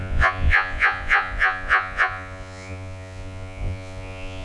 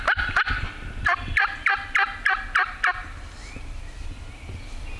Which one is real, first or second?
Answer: second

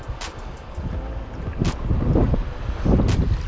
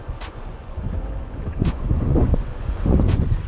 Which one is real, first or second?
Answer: first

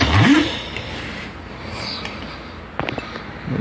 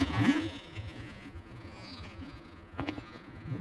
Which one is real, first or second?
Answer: first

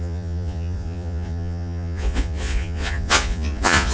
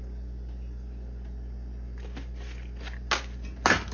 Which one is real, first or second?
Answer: second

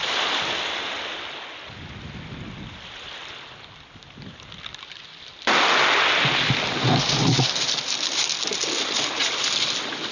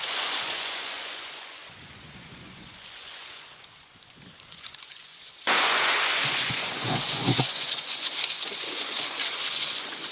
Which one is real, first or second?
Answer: first